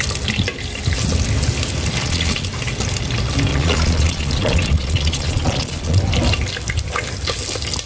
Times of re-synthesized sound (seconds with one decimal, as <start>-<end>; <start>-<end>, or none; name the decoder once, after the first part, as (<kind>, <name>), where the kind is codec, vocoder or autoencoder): 2.0-2.5 (vocoder, Vocos); 3.5-6.0